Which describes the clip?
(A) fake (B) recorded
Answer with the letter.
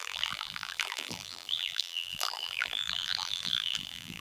A